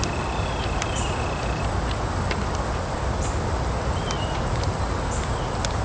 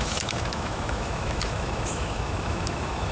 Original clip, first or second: first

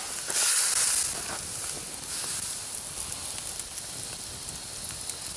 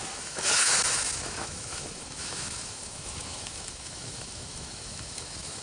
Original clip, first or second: first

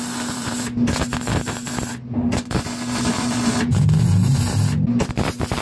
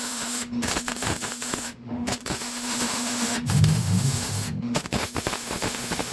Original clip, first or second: first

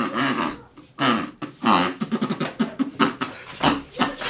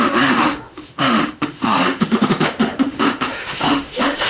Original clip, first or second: first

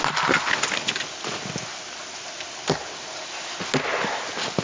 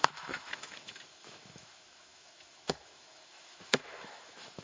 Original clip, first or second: first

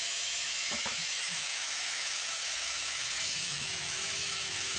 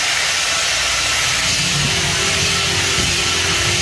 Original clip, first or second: second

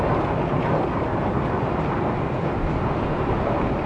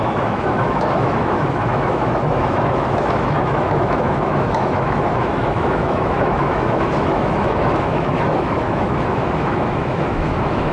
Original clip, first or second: first